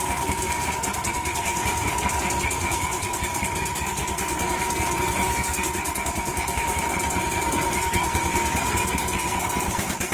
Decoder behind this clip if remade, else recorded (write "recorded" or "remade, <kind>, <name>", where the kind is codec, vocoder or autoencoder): remade, codec, SNAC